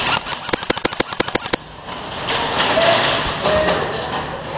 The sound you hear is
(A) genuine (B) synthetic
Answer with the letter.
A